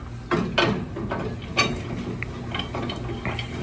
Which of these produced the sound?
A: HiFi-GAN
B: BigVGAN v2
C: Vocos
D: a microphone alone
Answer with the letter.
D